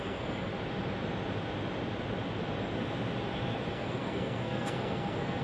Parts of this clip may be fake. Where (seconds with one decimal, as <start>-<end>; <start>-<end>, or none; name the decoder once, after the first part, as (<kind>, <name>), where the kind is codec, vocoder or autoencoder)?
0.0-0.5 (codec, SNAC); 3.7-5.4